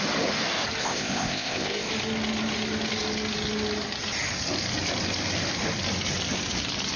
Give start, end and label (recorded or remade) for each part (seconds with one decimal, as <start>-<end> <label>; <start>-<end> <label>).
0.0-0.8 recorded; 0.8-1.9 remade; 1.9-7.0 recorded